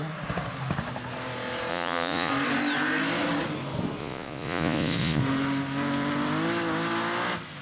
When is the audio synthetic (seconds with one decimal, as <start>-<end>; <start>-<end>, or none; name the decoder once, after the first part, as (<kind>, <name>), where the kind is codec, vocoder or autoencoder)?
1.7-2.3 (vocoder, Vocos); 4.0-5.2